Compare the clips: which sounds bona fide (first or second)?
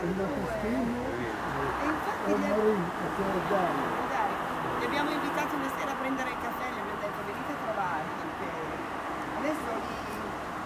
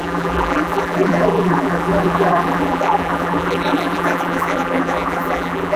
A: first